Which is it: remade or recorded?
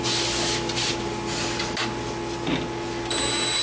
recorded